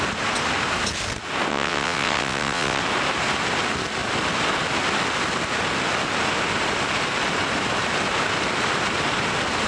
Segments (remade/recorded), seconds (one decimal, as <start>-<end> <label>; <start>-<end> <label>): 0.0-1.5 recorded; 1.5-2.8 remade; 2.8-9.7 recorded